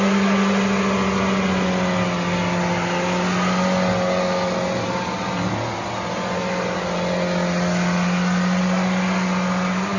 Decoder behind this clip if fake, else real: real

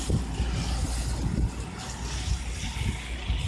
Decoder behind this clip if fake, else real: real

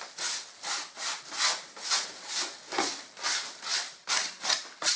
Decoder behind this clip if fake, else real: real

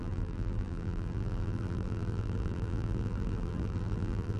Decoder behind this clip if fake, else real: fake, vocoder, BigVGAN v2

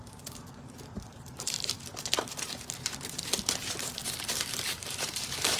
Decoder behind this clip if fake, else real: fake, vocoder, BigVGAN v2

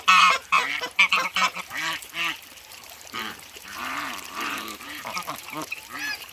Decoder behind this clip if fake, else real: fake, vocoder, BigVGAN v2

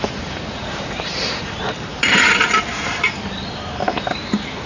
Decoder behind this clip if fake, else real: fake, vocoder, BigVGAN v2